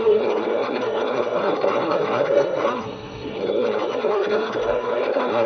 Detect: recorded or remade remade